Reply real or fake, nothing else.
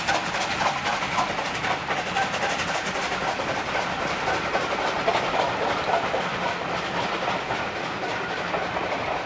real